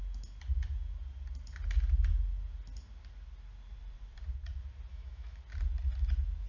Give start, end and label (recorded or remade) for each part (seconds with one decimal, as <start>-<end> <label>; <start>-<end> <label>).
0.0-4.9 recorded; 4.9-5.4 remade; 5.4-6.5 recorded